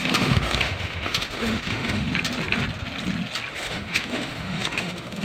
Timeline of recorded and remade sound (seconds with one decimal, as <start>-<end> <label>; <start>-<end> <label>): 0.0-2.1 remade; 2.1-3.5 recorded; 3.5-5.2 remade